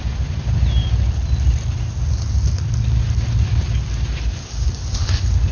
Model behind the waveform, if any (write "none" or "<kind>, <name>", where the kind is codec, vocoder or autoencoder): none